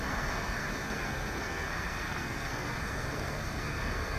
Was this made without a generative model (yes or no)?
no